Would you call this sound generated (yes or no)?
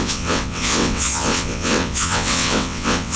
yes